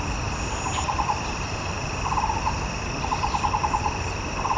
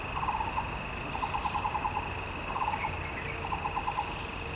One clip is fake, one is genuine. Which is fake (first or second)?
first